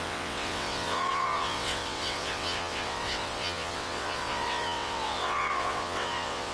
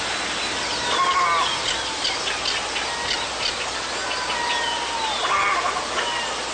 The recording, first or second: second